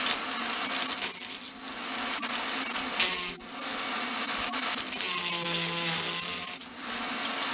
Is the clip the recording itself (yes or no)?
yes